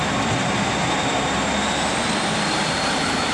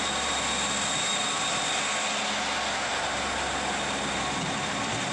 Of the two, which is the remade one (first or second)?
first